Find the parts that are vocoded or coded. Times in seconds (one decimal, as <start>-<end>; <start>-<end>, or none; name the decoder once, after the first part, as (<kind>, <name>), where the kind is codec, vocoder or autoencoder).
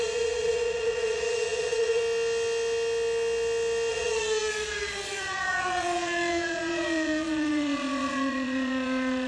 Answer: 0.0-2.0 (vocoder, Vocos); 3.9-9.3